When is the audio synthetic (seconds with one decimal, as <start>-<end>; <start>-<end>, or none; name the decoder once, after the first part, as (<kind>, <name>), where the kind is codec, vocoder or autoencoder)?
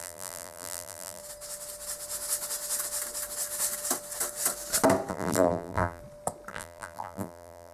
0.0-1.2 (vocoder, BigVGAN v2); 5.1-6.0; 6.5-7.7